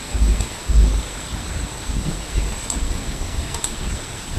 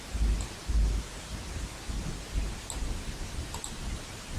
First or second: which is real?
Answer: second